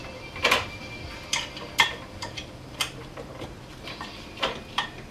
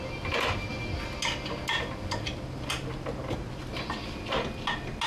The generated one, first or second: first